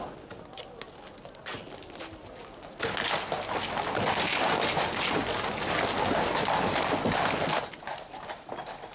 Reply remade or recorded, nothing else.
recorded